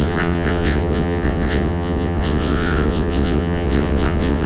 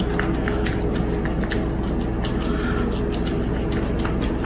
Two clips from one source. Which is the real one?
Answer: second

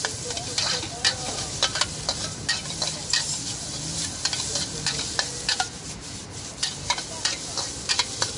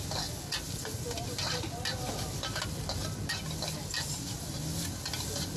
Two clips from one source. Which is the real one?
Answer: second